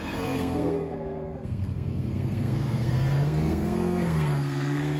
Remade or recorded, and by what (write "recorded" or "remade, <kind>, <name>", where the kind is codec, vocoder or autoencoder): remade, codec, SNAC